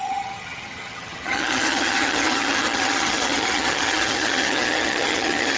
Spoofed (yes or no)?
yes